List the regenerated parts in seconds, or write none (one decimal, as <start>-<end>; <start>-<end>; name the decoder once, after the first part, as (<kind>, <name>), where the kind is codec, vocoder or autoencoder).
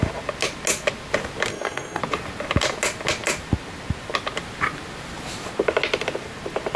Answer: 1.5-2.0 (codec, SNAC)